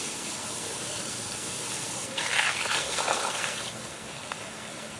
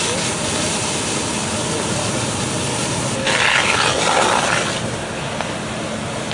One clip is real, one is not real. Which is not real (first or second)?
first